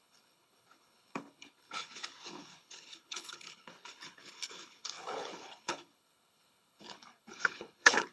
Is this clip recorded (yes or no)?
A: no